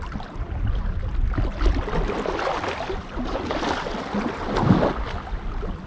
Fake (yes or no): no